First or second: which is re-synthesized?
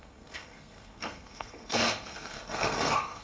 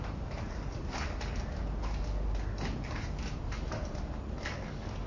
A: first